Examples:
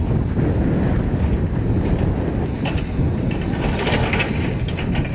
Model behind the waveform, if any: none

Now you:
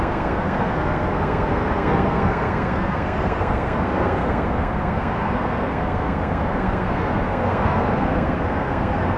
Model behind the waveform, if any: codec, SNAC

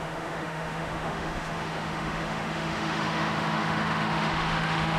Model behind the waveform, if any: autoencoder, DAC-VAE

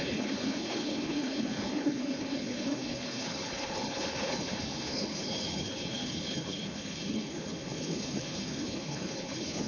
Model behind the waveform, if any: codec, HILCodec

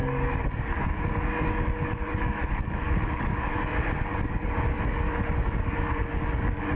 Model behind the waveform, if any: codec, DAC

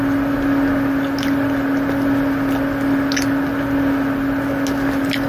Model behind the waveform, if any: none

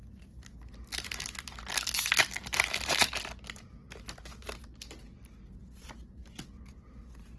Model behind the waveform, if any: none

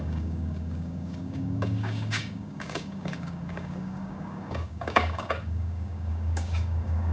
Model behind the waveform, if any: codec, DAC